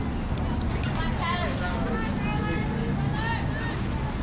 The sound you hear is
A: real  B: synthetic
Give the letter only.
A